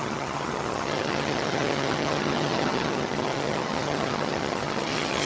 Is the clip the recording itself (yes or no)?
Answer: no